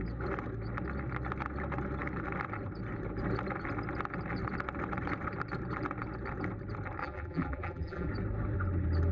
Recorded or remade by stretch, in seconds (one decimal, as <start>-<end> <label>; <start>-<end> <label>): 0.0-7.0 recorded; 7.0-8.1 remade; 8.1-9.1 recorded